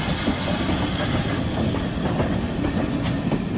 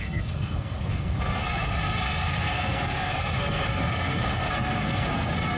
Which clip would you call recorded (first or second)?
first